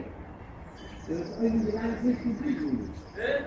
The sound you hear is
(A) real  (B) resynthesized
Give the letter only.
A